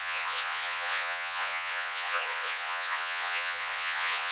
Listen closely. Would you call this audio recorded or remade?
remade